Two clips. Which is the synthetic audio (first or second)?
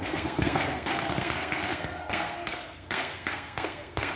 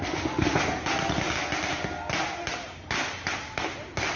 first